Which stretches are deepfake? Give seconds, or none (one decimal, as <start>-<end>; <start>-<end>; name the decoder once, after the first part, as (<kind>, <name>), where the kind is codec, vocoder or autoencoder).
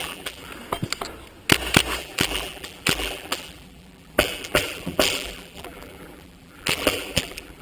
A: 0.0-0.5 (vocoder, BigVGAN v2); 2.0-7.6